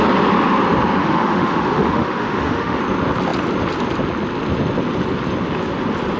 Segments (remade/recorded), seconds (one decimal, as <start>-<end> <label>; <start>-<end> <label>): 0.0-1.0 recorded; 1.0-2.8 remade; 2.8-6.2 recorded